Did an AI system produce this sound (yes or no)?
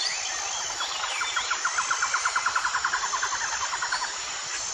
no